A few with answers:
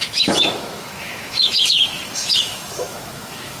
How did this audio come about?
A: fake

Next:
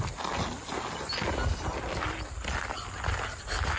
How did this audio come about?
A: real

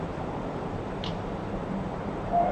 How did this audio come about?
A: fake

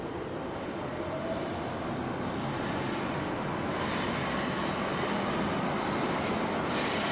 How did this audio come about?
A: real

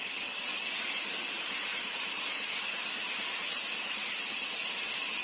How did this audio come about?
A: real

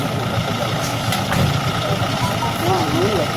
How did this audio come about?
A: fake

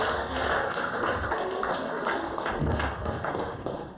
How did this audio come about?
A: fake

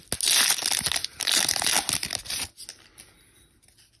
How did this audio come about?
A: real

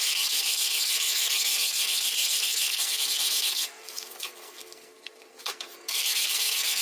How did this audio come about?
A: fake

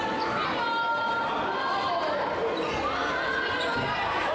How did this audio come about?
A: real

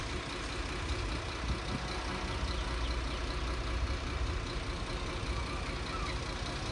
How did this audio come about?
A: real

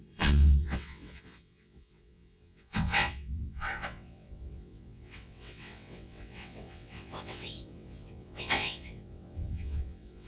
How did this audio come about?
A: fake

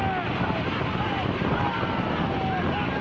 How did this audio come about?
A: real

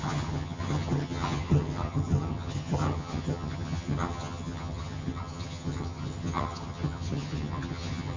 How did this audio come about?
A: fake